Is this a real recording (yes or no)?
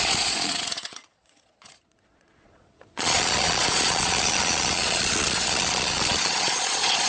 no